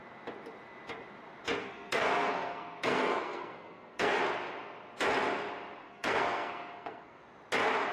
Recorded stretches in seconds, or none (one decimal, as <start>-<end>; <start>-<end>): 0.0-1.6; 4.2-5.8; 7.2-7.9